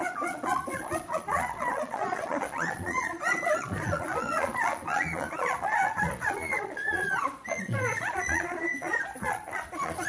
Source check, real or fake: fake